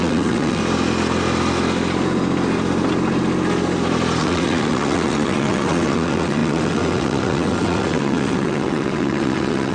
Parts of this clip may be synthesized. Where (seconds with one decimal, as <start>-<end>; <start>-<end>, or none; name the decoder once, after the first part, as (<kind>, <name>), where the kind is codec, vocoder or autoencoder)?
0.0-0.6 (vocoder, WaveNeXt); 4.2-9.7